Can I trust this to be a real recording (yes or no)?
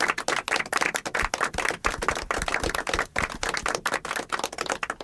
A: yes